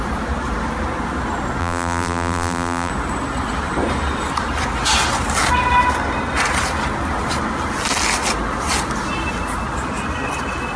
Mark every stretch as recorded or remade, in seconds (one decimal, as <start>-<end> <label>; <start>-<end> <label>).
0.0-1.6 recorded; 1.6-2.9 remade; 2.9-10.8 recorded